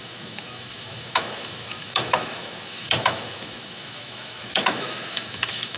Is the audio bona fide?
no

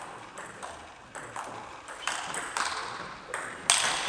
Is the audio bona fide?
yes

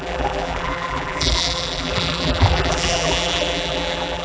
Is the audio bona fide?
no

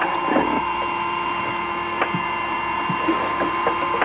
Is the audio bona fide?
yes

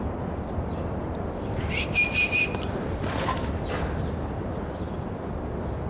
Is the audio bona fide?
yes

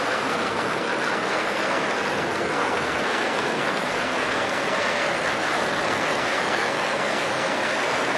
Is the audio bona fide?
no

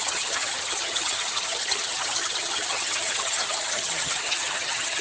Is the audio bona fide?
no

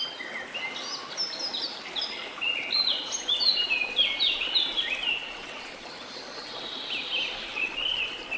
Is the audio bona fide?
yes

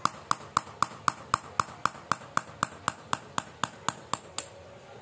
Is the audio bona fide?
yes